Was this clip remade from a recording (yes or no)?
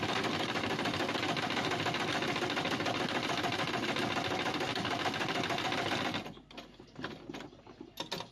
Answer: no